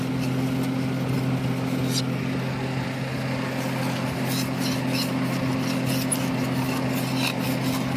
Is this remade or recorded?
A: recorded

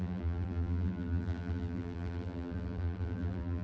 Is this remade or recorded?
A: remade